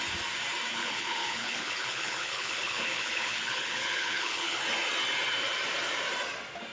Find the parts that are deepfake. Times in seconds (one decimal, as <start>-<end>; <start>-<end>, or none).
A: 0.7-4.6